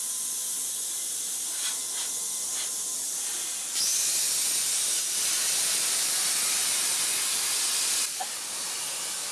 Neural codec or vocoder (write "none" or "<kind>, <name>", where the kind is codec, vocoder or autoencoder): none